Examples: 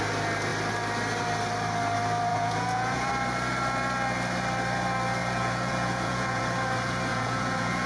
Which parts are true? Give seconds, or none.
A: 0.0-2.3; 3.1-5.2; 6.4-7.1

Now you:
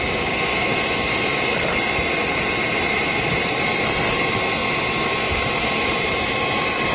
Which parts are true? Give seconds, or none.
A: 0.0-6.9

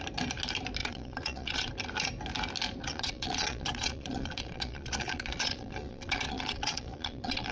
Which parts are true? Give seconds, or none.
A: 0.0-0.8; 1.7-2.8

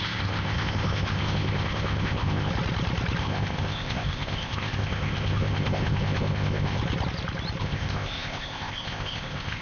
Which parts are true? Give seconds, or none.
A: 2.5-3.2; 6.8-7.6